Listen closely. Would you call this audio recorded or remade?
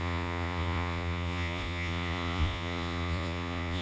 remade